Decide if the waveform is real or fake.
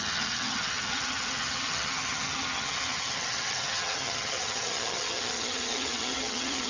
fake